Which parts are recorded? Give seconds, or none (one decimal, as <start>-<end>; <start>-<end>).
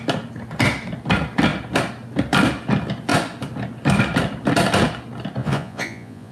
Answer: 0.0-5.4